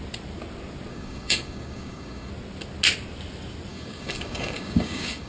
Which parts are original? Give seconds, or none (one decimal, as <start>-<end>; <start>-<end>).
0.0-0.9; 2.3-3.7